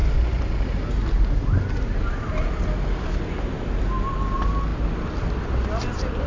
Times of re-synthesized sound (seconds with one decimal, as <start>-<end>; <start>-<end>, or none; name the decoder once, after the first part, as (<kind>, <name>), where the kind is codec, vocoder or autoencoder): none